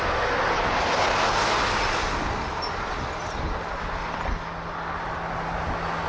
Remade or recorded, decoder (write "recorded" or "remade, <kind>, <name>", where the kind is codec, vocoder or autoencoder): recorded